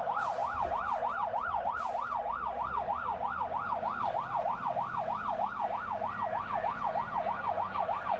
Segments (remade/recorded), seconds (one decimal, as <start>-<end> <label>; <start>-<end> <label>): 0.0-8.2 recorded